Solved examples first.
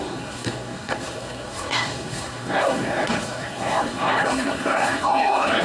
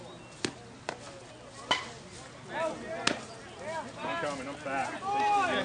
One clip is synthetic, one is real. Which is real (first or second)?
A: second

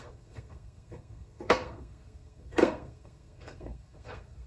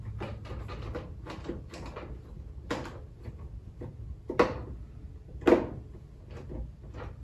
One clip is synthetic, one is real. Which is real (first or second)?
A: second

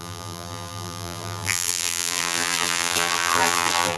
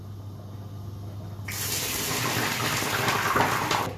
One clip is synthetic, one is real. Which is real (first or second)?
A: second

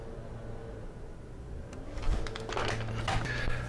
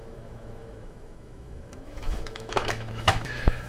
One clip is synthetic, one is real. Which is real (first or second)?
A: first